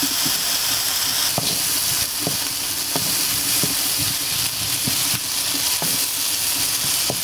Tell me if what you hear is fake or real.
real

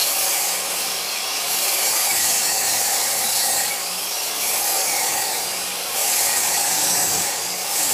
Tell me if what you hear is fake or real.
fake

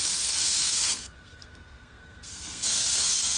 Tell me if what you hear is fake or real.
fake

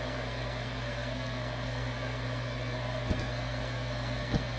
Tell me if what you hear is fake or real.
fake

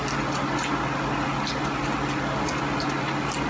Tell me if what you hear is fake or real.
real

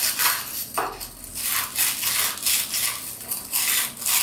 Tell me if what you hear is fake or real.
real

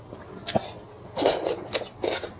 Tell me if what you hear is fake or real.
real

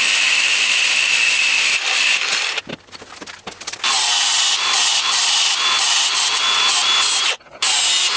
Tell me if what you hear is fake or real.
fake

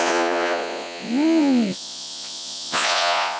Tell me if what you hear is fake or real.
fake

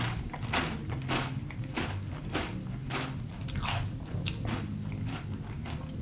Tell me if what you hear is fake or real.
real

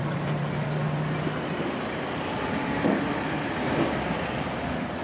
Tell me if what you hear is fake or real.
real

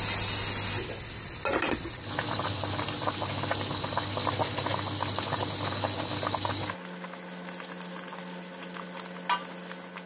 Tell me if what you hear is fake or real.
real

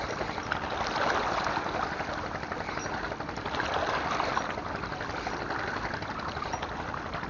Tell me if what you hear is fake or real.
real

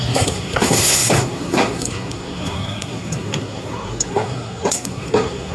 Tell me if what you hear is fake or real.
fake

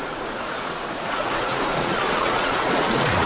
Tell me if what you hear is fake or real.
fake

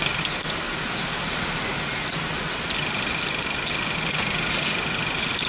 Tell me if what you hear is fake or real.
real